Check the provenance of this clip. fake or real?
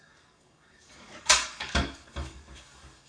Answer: fake